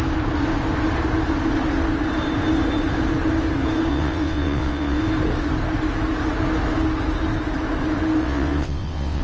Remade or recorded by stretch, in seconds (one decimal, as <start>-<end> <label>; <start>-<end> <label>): 0.0-3.9 recorded; 3.9-5.0 remade; 5.0-8.2 recorded; 8.2-9.2 remade